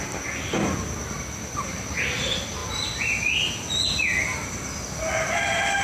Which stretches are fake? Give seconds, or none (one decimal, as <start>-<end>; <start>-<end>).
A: none